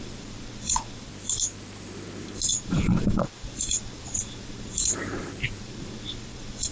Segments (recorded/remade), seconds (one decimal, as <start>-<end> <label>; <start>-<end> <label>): 0.0-1.1 remade; 1.1-2.5 recorded; 2.5-4.9 remade; 4.9-5.6 recorded; 5.6-6.7 remade